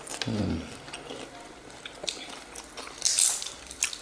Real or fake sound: real